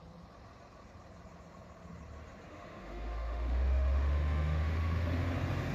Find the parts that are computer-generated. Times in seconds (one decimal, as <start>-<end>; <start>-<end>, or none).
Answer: 2.5-5.2

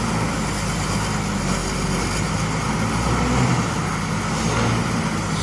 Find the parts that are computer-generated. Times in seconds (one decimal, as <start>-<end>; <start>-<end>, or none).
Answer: none